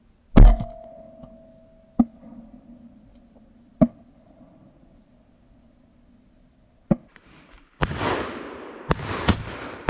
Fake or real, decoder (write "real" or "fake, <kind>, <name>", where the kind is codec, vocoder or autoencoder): real